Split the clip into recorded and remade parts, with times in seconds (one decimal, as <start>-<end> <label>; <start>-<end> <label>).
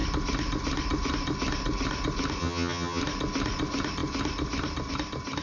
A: 0.0-2.4 recorded; 2.4-3.0 remade; 3.0-5.4 recorded